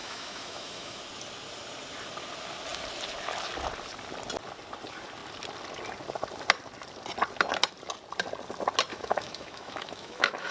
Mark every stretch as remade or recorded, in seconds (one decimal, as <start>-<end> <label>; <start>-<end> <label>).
0.0-1.0 remade; 1.0-8.9 recorded; 8.9-10.5 remade